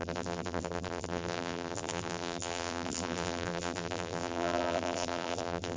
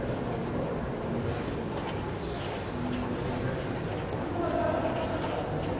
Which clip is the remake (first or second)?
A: first